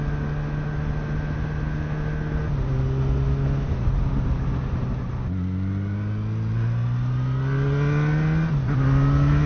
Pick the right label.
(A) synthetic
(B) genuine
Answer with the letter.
B